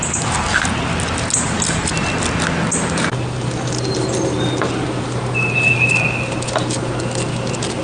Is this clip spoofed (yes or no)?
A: no